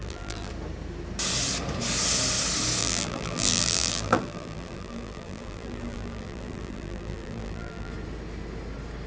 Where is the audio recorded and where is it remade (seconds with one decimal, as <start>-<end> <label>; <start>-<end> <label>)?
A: 0.0-0.5 remade; 0.5-2.8 recorded; 2.8-7.9 remade; 7.9-9.1 recorded